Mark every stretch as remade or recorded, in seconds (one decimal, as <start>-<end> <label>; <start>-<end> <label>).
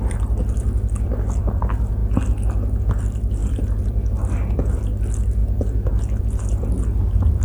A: 0.0-2.0 remade; 2.0-2.8 recorded; 2.8-7.4 remade